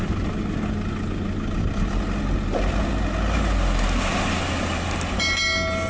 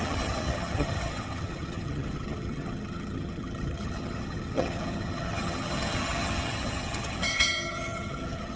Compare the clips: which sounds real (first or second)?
first